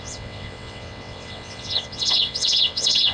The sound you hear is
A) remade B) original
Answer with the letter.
A